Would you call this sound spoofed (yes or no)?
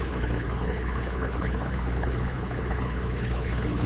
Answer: yes